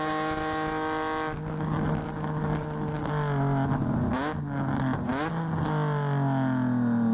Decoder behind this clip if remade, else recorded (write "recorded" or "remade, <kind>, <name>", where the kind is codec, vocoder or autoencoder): recorded